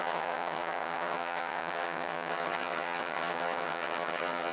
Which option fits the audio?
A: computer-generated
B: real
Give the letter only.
A